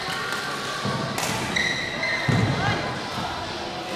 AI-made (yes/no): no